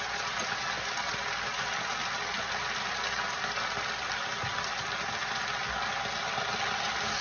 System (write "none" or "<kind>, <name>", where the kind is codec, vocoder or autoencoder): none